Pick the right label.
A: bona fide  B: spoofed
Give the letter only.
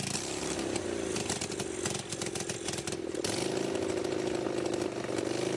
A